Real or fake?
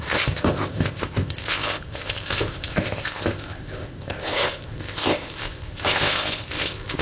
fake